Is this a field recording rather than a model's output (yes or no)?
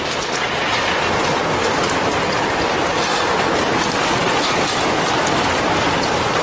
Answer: yes